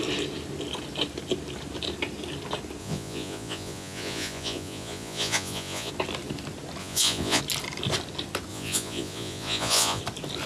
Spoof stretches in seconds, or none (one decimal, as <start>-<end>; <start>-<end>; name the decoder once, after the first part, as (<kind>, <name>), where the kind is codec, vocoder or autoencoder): 2.8-5.9 (vocoder, Vocos); 6.8-7.4; 8.5-10.0